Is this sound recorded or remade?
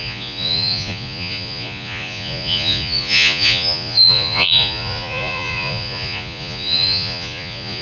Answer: remade